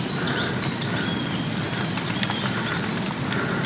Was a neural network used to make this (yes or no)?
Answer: no